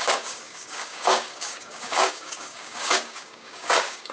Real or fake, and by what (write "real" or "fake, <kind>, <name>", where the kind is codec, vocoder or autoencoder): fake, codec, DAC